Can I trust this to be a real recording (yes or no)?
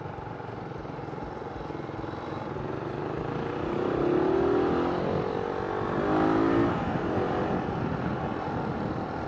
yes